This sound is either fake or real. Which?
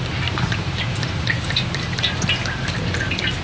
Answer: fake